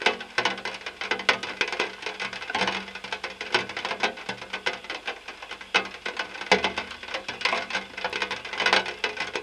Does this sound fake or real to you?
real